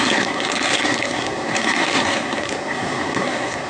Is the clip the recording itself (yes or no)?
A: no